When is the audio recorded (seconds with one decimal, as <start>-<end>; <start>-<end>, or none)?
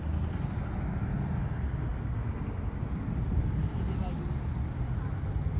0.0-5.6